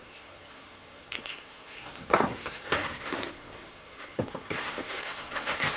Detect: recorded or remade remade